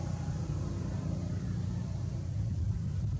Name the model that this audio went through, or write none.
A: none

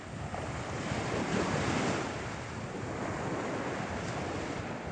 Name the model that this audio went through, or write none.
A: none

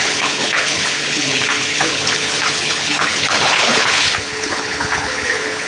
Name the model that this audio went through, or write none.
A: codec, HILCodec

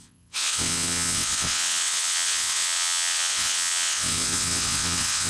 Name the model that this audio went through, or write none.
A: vocoder, WaveNeXt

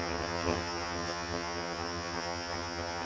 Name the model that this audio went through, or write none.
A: vocoder, HiFi-GAN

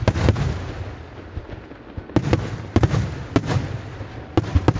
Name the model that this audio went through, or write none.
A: none